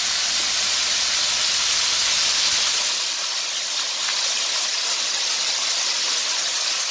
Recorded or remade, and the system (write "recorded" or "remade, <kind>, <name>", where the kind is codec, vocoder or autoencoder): recorded